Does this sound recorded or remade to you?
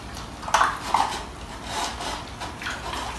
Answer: recorded